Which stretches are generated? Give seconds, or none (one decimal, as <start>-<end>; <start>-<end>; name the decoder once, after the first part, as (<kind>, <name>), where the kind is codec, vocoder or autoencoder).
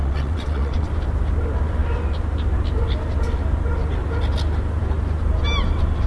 0.0-0.9 (vocoder, WaveNeXt)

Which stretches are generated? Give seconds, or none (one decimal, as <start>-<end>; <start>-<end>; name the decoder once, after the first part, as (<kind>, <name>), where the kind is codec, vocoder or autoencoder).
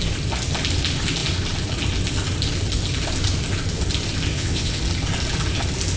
4.3-4.8 (vocoder, WaveNeXt)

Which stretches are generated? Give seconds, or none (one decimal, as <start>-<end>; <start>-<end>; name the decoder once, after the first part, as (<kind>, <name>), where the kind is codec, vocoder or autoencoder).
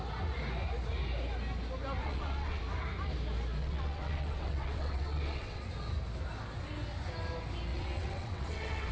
2.0-2.6 (vocoder, WaveNeXt); 3.6-5.7; 7.7-8.9